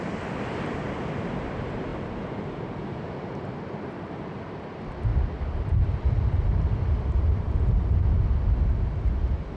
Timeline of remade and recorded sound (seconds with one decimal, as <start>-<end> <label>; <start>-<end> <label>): 0.0-5.1 recorded; 5.1-7.0 remade; 7.0-9.6 recorded